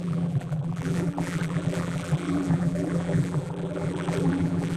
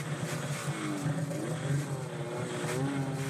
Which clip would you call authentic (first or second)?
second